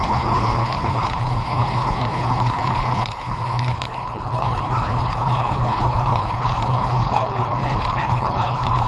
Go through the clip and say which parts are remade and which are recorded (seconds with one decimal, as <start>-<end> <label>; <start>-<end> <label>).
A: 0.0-8.9 remade